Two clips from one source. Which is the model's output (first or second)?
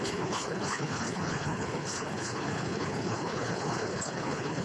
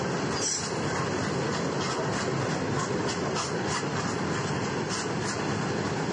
first